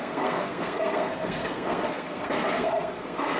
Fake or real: fake